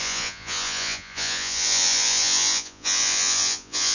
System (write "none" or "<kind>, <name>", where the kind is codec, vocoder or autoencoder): vocoder, Vocos